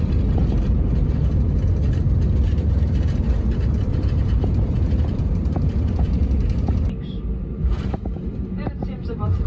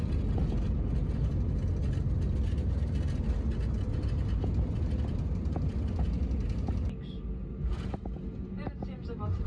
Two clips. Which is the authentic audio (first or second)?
second